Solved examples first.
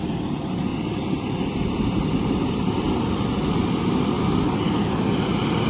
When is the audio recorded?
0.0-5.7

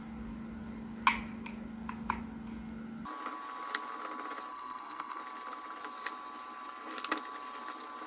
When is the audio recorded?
0.0-4.5; 5.2-8.1

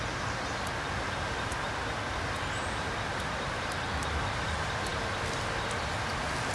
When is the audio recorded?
0.0-6.5

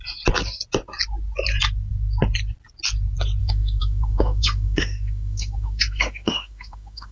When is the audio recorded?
0.0-3.4

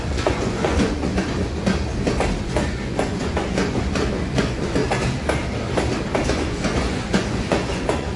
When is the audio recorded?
1.7-2.4; 4.8-6.3